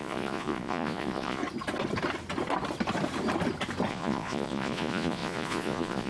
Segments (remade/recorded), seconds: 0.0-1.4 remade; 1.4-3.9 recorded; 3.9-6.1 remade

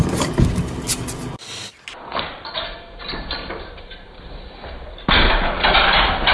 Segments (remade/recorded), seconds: 0.0-2.1 recorded; 2.1-6.3 remade

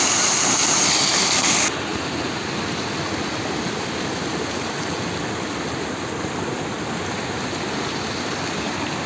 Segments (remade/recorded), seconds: 0.0-9.1 recorded